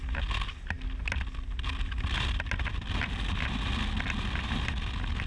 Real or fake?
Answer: real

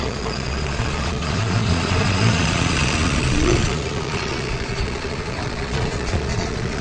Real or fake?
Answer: fake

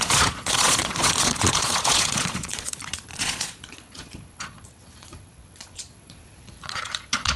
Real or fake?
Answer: fake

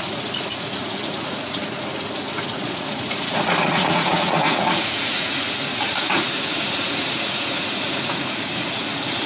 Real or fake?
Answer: fake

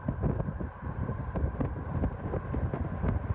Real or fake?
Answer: real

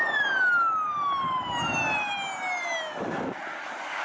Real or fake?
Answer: real